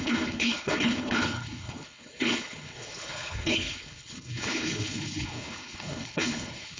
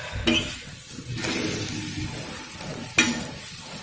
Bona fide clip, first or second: second